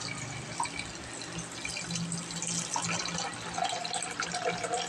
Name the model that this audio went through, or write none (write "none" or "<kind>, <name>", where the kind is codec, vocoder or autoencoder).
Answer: none